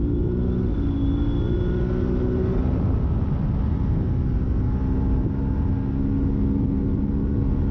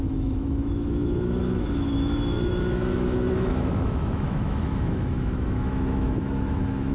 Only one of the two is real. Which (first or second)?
first